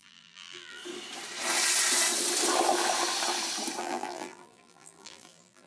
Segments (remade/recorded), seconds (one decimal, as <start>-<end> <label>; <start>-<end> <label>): 0.0-0.8 remade; 0.8-3.8 recorded; 3.8-5.7 remade